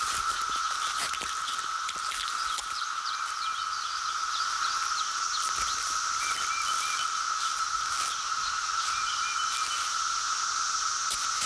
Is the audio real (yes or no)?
yes